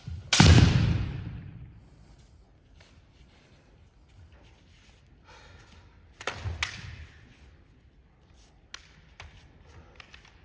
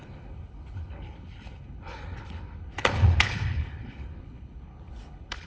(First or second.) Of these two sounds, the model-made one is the second